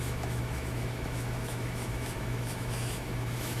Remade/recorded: remade